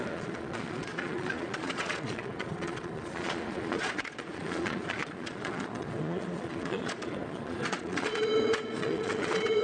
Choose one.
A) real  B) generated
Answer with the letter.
B